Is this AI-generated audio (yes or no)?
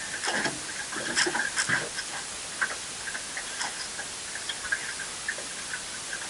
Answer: no